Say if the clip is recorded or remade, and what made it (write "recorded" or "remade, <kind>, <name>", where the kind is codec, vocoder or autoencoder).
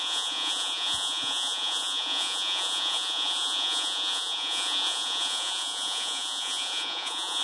remade, vocoder, Vocos